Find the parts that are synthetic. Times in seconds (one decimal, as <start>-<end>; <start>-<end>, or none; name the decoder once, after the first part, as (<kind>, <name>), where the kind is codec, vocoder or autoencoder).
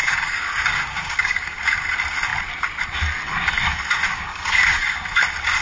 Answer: 0.0-1.6 (codec, DAC); 4.1-5.0